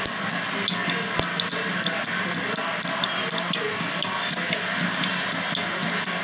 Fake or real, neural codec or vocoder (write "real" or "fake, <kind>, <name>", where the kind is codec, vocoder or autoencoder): real